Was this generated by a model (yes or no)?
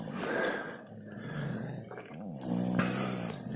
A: no